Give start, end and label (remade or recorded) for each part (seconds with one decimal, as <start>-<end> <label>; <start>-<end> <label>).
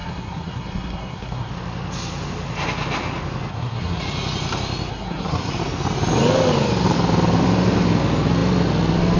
0.0-1.5 remade; 1.5-3.5 recorded; 3.5-4.0 remade; 4.0-4.9 recorded; 4.9-5.5 remade; 5.5-9.2 recorded